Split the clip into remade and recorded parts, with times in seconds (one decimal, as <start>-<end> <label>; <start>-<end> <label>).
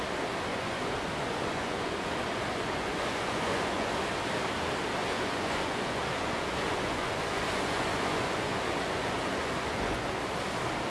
0.0-0.5 recorded; 0.5-3.9 remade; 3.9-5.0 recorded; 5.0-10.2 remade; 10.2-10.9 recorded